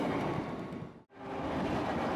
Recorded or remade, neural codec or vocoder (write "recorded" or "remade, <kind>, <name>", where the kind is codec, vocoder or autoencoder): recorded